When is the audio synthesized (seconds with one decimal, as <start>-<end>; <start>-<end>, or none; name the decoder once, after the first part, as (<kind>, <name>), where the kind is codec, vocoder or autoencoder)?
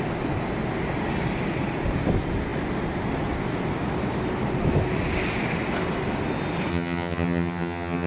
6.7-8.1 (vocoder, HiFi-GAN)